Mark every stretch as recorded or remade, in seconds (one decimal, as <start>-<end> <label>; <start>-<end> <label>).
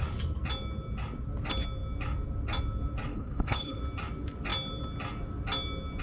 0.0-3.1 recorded; 3.1-3.8 remade; 3.8-6.0 recorded